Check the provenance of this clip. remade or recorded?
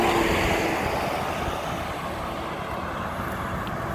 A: recorded